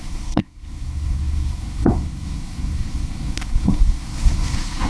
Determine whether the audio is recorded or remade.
remade